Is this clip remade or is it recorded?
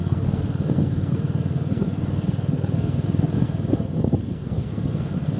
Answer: remade